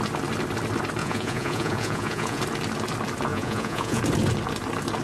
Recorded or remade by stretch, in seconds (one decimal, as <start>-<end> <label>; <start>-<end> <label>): 0.0-1.0 recorded; 1.0-2.4 remade; 2.4-3.3 recorded; 3.3-4.0 remade; 4.0-5.0 recorded